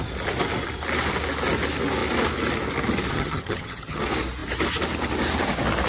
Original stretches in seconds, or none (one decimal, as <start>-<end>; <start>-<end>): 0.0-3.1; 4.0-5.9